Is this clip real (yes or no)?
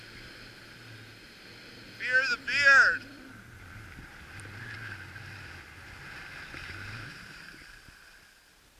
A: yes